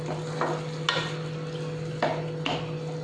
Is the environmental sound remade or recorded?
recorded